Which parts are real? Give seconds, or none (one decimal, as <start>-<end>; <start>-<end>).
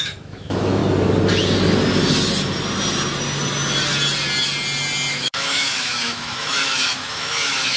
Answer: 0.8-5.1